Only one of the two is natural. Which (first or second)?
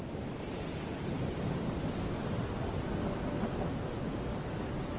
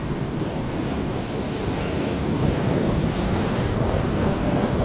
first